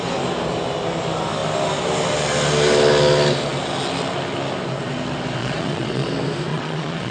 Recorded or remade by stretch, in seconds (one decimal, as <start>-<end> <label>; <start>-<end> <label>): 0.0-5.4 recorded; 5.4-6.1 remade; 6.1-6.5 recorded; 6.5-7.1 remade